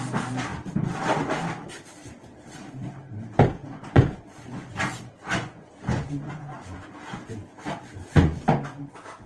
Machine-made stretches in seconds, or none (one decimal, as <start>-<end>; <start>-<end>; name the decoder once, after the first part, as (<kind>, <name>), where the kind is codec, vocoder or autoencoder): 3.6-6.9 (vocoder, Vocos); 8.1-8.8